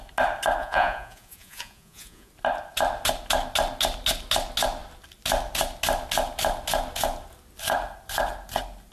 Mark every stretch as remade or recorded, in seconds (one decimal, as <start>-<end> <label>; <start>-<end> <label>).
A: 0.0-0.6 recorded; 0.6-2.3 remade; 2.3-8.9 recorded